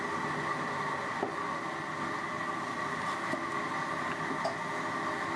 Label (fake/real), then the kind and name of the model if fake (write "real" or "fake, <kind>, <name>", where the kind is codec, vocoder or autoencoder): real